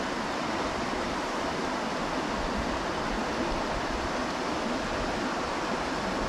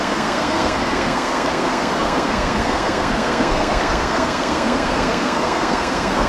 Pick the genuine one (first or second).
first